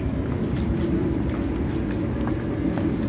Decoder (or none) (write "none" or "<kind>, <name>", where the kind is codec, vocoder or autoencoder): none